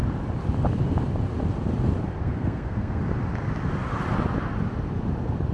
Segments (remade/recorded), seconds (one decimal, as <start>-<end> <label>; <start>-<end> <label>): 0.0-2.2 recorded; 2.2-3.0 remade; 3.0-5.5 recorded